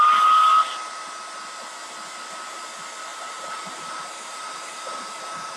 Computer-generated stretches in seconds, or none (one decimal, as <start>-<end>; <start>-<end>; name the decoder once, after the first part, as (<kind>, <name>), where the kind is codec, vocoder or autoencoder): 3.1-5.6 (vocoder, BigVGAN v2)